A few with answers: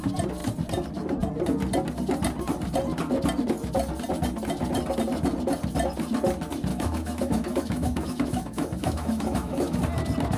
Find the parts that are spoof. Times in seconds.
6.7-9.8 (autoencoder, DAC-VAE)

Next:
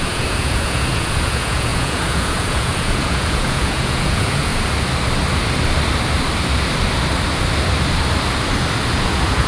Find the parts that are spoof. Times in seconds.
0.0-4.5 (vocoder, Vocos); 8.9-9.5